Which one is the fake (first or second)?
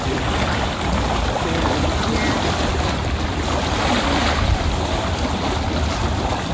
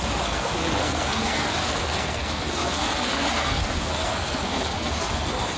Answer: second